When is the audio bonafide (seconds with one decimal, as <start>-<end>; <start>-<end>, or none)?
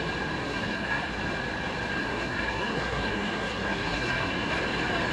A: 0.0-0.4; 1.1-2.0; 4.5-5.1